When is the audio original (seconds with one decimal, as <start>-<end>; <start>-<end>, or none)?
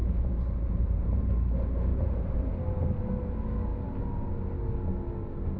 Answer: 1.3-1.9; 2.6-5.6